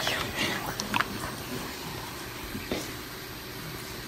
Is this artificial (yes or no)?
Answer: no